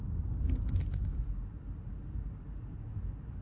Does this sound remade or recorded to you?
recorded